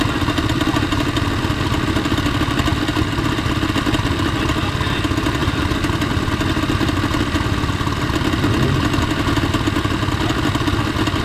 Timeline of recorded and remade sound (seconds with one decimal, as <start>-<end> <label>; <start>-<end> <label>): 0.0-5.4 recorded; 5.4-6.1 remade; 6.1-11.2 recorded